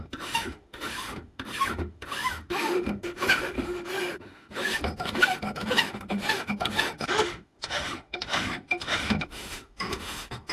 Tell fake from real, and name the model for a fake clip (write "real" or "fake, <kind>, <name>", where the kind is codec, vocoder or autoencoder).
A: fake, autoencoder, DAC-VAE